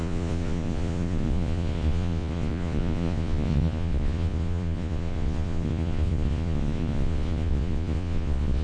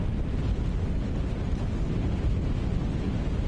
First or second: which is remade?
first